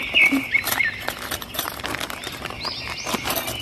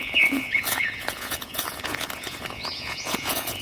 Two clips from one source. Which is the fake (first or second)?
second